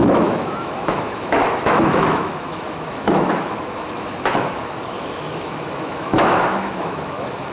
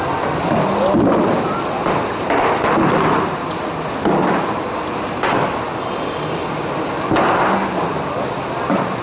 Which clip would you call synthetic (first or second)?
first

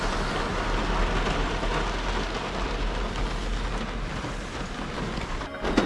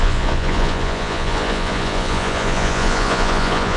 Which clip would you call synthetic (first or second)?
second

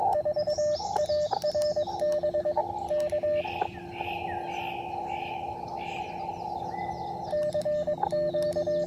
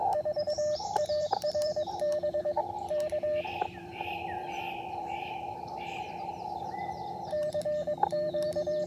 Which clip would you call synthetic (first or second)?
second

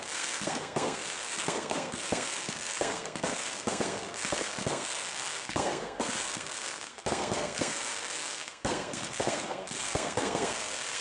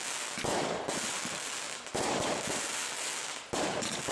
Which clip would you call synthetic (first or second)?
first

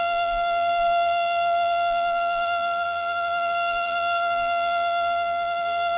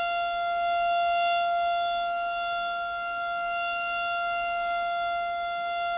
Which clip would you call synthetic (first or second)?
first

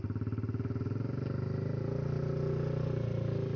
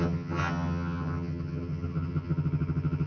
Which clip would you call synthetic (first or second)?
second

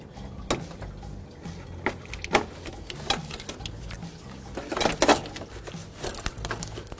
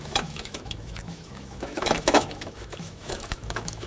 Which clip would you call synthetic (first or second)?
second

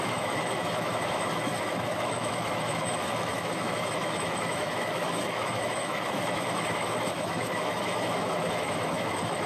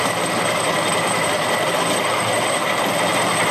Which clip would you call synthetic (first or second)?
first